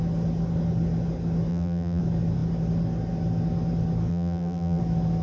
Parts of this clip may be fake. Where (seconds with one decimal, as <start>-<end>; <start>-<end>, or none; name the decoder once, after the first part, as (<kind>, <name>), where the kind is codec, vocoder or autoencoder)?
1.5-2.0 (vocoder, BigVGAN v2); 4.1-4.8